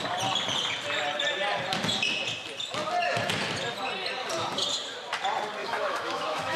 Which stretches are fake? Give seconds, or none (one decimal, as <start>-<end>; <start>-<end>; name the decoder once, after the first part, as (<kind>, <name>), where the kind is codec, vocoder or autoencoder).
5.6-6.6 (autoencoder, DAC-VAE)